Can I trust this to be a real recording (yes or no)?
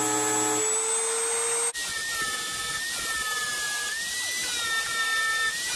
yes